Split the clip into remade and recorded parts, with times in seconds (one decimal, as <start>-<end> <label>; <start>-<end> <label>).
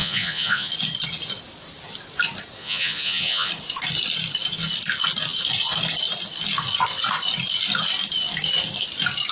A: 0.0-0.7 remade; 0.7-2.6 recorded; 2.6-3.5 remade; 3.5-9.3 recorded